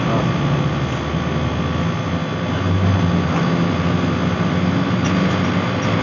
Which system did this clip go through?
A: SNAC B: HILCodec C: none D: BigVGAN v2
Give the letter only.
C